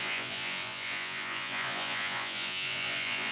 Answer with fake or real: fake